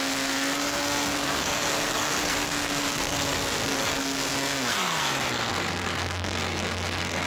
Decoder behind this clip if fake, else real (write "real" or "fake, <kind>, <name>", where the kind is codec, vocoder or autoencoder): fake, codec, SNAC